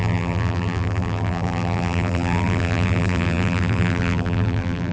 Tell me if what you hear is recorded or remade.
remade